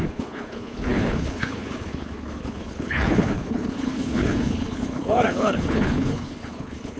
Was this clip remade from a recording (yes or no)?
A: yes